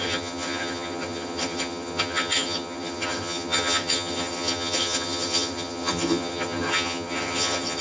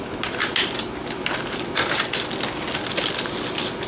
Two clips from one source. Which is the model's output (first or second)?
first